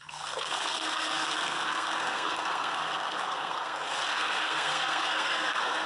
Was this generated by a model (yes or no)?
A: yes